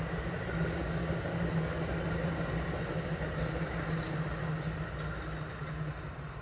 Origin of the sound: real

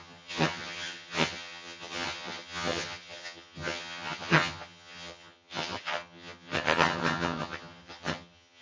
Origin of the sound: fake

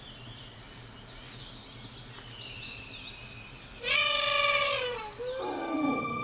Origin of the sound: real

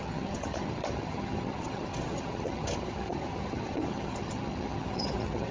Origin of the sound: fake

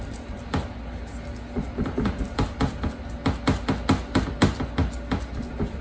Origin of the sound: real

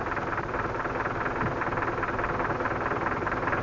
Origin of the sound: real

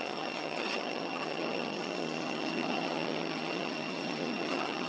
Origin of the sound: fake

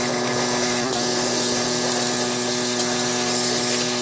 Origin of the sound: real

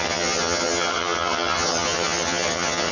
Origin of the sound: fake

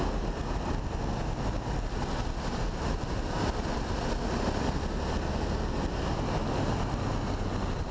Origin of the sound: real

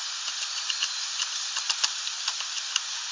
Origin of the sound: real